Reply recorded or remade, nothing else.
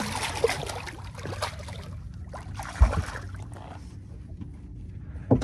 recorded